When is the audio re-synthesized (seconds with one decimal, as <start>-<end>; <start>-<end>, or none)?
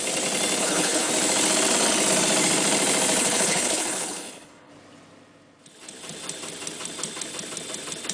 0.6-1.1; 3.2-4.7